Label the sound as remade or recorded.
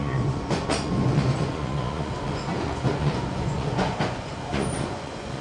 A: remade